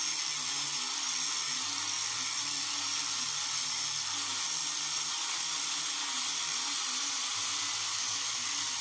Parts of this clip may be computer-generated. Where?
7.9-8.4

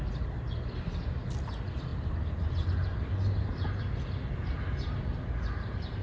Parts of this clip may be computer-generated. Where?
none

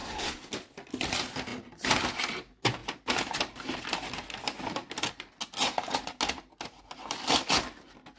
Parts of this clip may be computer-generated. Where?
0.0-0.5

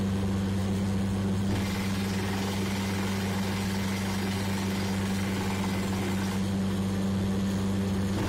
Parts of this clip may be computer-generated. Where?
none

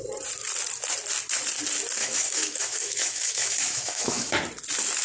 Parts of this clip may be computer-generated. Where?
2.0-4.3

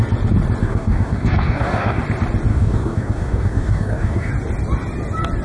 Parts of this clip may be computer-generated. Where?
0.6-2.0; 2.5-4.3

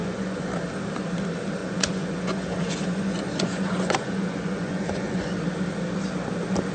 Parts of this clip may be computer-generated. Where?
0.0-0.5; 1.6-5.3